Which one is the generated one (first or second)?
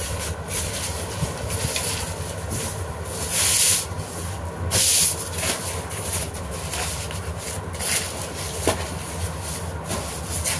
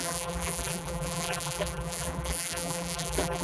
second